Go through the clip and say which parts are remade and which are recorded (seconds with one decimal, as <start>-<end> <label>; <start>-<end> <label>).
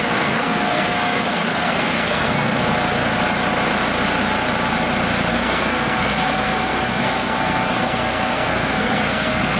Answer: 0.0-2.6 remade; 2.6-5.3 recorded; 5.3-9.6 remade